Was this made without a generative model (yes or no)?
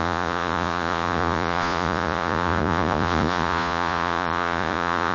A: no